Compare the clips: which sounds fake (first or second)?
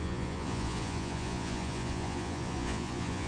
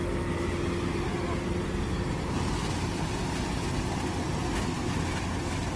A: first